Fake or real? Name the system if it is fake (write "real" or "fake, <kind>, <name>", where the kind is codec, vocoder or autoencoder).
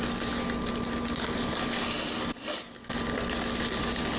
real